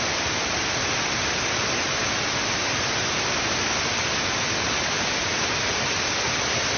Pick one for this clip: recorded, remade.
recorded